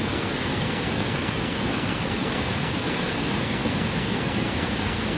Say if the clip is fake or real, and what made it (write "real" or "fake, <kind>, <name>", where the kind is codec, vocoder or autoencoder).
fake, codec, SNAC